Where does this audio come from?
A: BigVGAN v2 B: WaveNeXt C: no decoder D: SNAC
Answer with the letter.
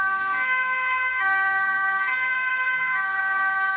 D